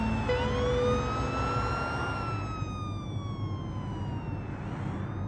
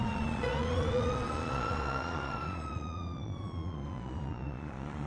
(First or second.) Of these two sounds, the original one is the first